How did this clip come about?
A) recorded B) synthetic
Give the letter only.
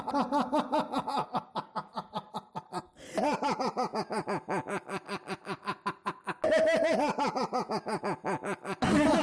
A